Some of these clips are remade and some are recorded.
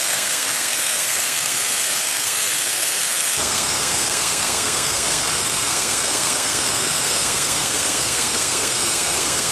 remade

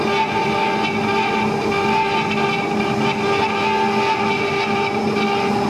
recorded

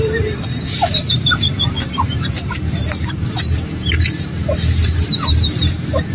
remade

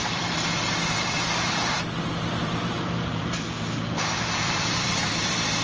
remade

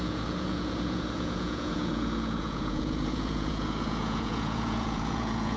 remade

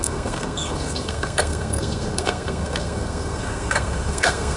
remade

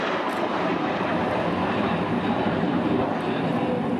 remade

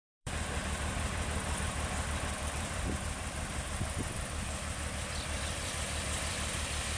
remade